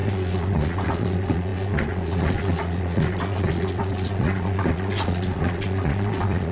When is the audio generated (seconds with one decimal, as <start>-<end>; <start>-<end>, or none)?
0.0-6.5